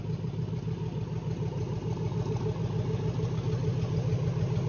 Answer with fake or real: real